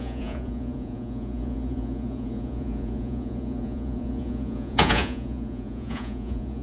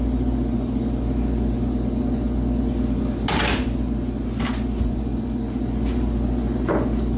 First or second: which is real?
second